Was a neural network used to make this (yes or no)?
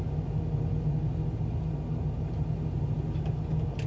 no